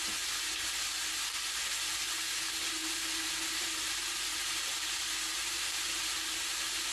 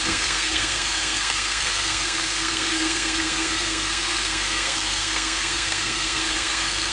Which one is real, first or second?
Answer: first